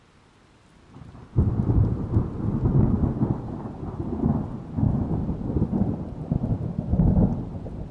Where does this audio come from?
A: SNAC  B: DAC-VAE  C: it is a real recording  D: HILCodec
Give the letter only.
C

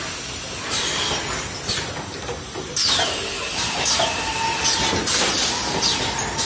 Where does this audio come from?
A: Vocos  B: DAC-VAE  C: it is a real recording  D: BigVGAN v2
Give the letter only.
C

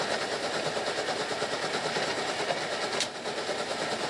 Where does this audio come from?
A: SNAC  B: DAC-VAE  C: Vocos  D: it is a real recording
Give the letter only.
D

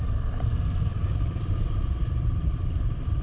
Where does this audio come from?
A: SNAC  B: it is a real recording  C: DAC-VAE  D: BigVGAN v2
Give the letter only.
D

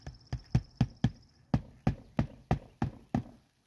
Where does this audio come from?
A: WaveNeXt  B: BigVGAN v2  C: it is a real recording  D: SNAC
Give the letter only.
C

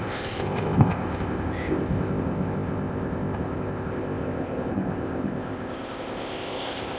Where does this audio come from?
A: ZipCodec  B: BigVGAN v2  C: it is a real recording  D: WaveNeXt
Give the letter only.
A